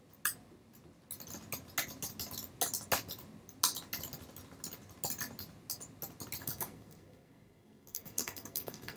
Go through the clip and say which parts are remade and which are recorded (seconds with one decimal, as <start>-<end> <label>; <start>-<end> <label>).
0.0-6.4 recorded; 6.4-9.0 remade